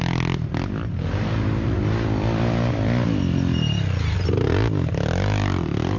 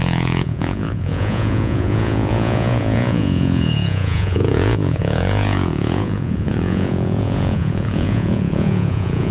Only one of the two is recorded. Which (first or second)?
first